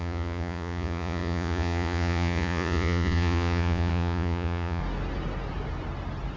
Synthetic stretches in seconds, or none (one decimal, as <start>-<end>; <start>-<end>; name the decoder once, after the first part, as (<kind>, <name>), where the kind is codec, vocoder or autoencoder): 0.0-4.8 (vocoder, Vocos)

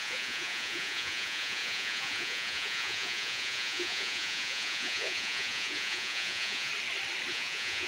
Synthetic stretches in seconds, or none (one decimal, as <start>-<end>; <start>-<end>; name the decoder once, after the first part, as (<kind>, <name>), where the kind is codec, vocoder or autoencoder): 0.0-6.7 (vocoder, Vocos); 7.3-7.9

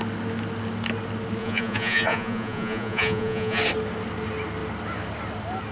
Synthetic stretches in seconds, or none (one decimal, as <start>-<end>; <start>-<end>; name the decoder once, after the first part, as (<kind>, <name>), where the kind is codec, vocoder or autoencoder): 1.4-3.6 (vocoder, Vocos)

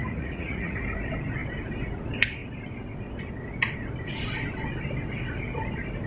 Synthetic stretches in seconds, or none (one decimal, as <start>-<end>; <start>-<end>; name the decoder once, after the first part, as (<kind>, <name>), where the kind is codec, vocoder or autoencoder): 0.0-0.8 (vocoder, Vocos)

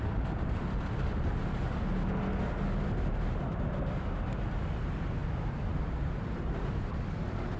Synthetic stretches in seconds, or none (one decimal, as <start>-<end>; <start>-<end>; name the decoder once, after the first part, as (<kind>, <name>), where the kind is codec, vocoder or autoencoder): none

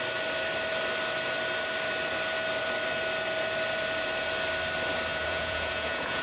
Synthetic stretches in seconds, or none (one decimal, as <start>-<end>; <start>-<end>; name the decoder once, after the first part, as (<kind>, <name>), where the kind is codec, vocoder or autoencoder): 5.1-6.2 (vocoder, Vocos)

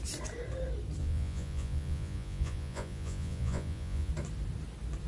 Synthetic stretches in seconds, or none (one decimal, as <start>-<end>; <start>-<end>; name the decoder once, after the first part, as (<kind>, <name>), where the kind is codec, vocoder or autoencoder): 1.0-4.1 (vocoder, Vocos)

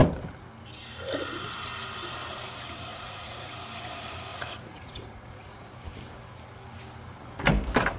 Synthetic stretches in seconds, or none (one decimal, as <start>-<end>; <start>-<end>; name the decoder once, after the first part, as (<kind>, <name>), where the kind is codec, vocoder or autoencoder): 2.9-3.5 (vocoder, Vocos); 4.3-5.7